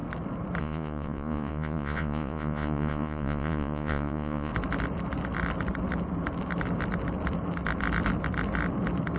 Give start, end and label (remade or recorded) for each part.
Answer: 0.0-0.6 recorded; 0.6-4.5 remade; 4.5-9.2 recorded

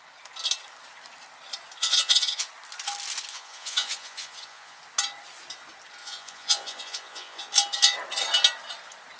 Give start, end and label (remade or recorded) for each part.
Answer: 0.0-1.8 recorded; 1.8-2.5 remade; 2.5-3.3 recorded; 3.3-4.8 remade; 4.8-6.0 recorded; 6.0-7.5 remade; 7.5-9.2 recorded

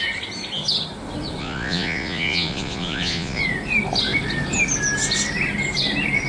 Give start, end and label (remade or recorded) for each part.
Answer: 0.0-1.4 recorded; 1.4-3.4 remade; 3.4-6.3 recorded